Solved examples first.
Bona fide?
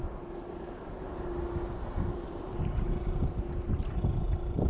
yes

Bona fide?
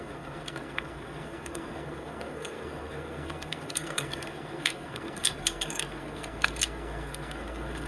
no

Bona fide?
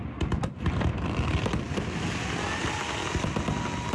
yes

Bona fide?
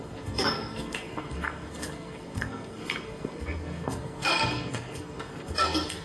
no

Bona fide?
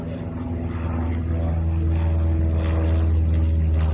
yes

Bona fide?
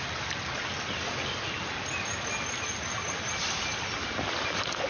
yes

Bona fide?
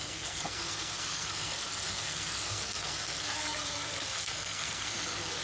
no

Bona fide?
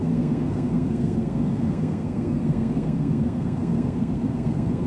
no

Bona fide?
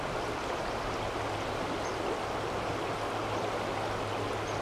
yes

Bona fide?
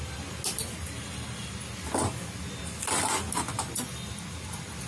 yes